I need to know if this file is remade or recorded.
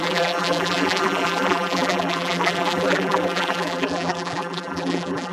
remade